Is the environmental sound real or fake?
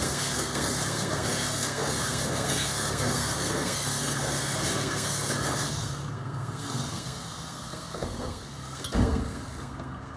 fake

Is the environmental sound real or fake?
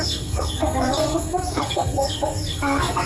fake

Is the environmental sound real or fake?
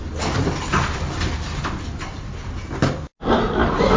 real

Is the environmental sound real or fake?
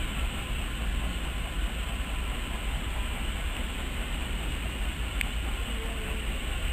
real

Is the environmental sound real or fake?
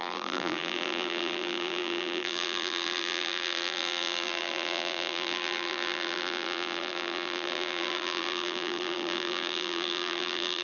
fake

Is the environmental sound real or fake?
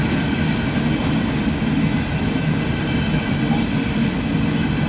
real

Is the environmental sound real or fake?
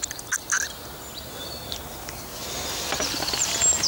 real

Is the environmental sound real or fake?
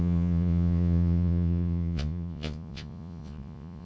fake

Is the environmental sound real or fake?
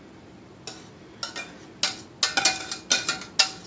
real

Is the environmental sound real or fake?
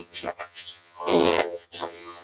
fake